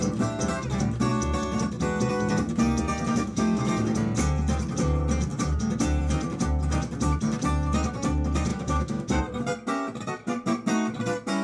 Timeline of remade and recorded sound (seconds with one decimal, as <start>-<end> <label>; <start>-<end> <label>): 0.0-3.1 recorded; 3.1-3.7 remade; 3.7-8.5 recorded; 8.5-9.2 remade; 9.2-11.4 recorded